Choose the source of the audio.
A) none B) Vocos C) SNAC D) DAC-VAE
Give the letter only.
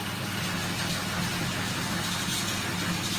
A